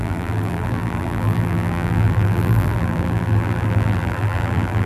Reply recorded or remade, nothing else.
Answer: remade